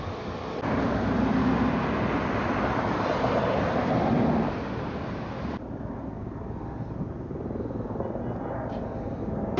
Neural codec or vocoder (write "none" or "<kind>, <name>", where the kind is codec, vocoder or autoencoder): none